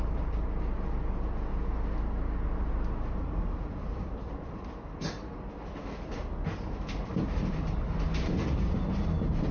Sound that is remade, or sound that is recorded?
recorded